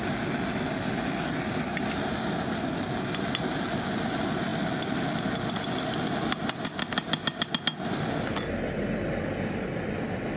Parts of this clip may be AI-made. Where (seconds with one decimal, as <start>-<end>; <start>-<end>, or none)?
none